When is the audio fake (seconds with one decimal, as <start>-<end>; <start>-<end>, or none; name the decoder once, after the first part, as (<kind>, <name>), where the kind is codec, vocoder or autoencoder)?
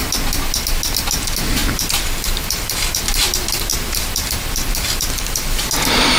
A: 1.6-3.0 (vocoder, BigVGAN v2); 3.7-5.3